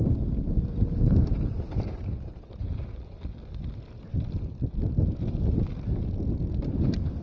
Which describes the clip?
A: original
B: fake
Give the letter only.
A